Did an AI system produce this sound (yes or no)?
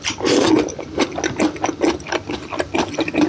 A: no